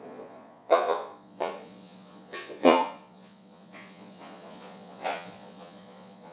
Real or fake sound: fake